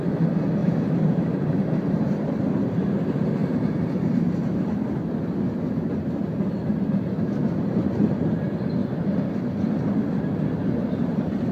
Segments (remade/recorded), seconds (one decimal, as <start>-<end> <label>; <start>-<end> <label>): 0.0-0.6 recorded; 0.6-1.2 remade; 1.2-3.4 recorded; 3.4-4.8 remade; 4.8-11.5 recorded